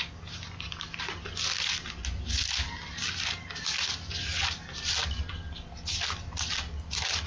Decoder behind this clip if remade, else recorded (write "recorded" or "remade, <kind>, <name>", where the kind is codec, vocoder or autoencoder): recorded